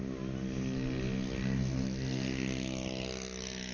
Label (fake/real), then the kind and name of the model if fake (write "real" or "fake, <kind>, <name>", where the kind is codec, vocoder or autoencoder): real